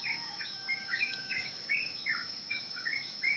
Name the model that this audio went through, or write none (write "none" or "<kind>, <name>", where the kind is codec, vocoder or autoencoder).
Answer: autoencoder, DAC-VAE